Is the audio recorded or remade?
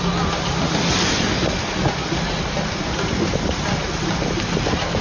recorded